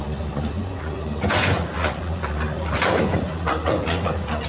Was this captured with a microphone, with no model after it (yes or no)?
no